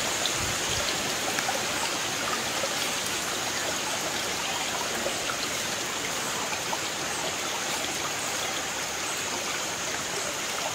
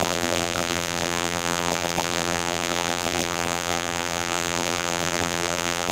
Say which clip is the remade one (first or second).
second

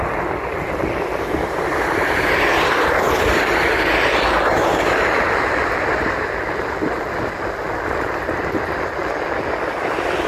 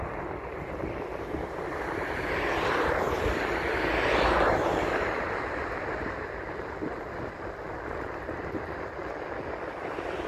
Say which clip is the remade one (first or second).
second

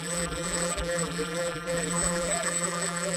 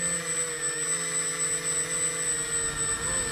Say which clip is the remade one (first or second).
first